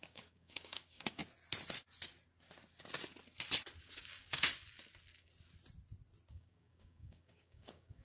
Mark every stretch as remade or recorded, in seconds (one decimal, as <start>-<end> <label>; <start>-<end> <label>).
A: 0.0-1.2 remade; 1.2-3.8 recorded; 3.8-4.5 remade; 4.5-6.3 recorded; 6.3-8.0 remade